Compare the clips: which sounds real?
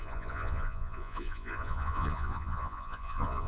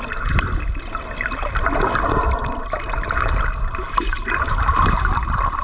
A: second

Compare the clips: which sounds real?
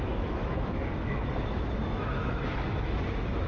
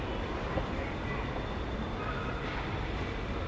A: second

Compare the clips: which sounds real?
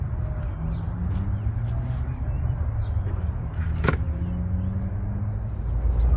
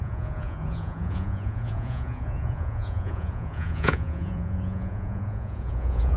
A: first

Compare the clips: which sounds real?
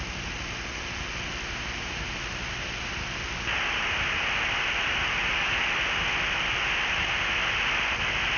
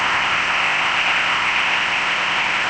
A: first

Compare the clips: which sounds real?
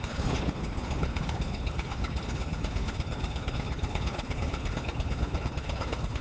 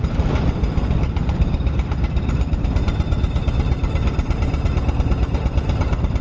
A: second